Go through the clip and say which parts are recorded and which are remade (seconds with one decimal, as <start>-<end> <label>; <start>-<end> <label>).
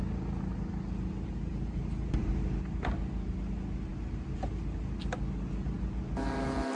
0.0-1.5 recorded; 1.5-2.3 remade; 2.3-6.8 recorded